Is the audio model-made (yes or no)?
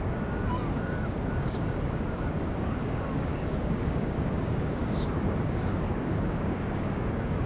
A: yes